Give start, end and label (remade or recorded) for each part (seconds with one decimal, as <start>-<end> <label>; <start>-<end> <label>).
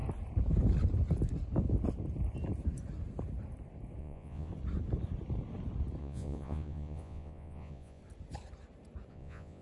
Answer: 0.0-4.0 recorded; 4.0-4.5 remade; 4.5-6.0 recorded; 6.0-8.0 remade; 8.0-9.1 recorded; 9.1-9.6 remade